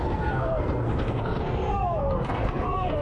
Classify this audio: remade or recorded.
remade